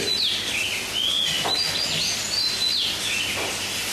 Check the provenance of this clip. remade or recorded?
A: recorded